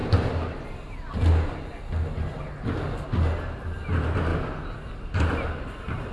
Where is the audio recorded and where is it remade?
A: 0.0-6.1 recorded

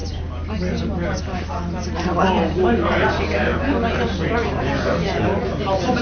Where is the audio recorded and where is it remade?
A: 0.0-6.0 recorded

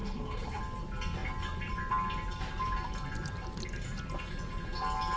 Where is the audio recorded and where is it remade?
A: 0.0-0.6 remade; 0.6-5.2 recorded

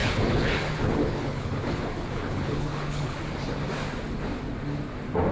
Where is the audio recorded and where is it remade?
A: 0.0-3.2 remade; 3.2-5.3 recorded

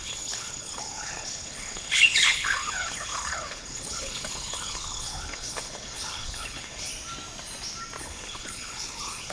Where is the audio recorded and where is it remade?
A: 0.0-6.9 remade; 6.9-8.0 recorded; 8.0-9.3 remade

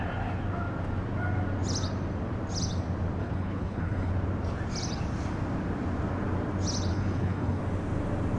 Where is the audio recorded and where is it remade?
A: 0.0-3.2 recorded; 3.2-4.1 remade; 4.1-6.9 recorded; 6.9-7.6 remade; 7.6-8.4 recorded

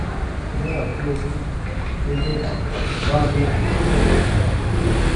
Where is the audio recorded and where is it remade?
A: 0.0-5.2 recorded

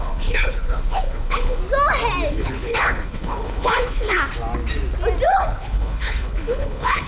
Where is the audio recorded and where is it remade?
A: 0.0-1.6 remade; 1.6-2.3 recorded; 2.3-4.2 remade; 4.2-5.3 recorded; 5.3-7.1 remade